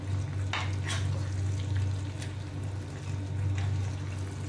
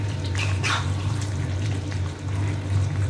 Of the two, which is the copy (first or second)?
second